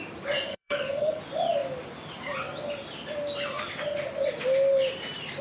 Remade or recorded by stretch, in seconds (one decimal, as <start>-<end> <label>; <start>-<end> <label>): 0.0-0.5 recorded; 0.5-1.2 remade; 1.2-5.4 recorded